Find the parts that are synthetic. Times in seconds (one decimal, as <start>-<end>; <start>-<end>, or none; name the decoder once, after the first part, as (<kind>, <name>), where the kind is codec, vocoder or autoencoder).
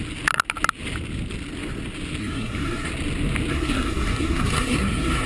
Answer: 2.2-2.9 (codec, SNAC); 3.5-5.3